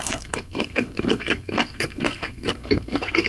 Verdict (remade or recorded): remade